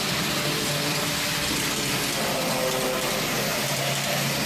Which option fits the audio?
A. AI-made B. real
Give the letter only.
B